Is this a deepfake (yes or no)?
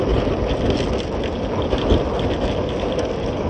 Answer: no